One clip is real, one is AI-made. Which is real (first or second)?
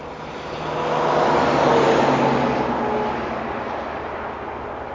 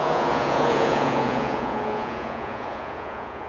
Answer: first